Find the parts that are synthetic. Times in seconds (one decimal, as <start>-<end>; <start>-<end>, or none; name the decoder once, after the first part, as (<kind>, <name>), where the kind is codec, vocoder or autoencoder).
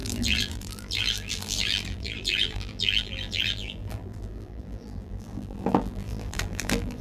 0.0-7.0 (vocoder, BigVGAN v2)